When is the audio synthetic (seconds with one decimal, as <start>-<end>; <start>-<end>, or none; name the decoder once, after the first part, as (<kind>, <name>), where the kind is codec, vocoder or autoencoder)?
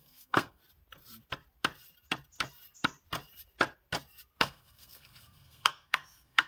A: 0.0-0.6 (codec, SNAC); 4.4-6.5